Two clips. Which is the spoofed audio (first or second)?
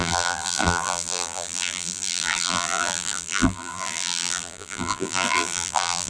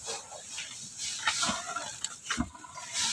first